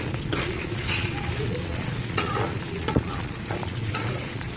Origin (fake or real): fake